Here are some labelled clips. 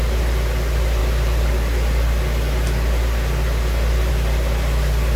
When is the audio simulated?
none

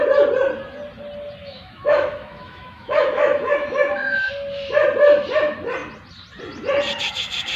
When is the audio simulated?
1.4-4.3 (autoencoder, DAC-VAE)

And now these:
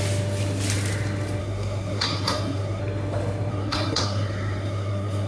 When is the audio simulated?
1.4-2.8 (codec, SNAC); 3.5-5.3